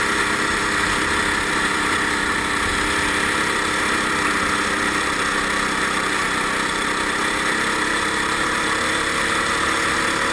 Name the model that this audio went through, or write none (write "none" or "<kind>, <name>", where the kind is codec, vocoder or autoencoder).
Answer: none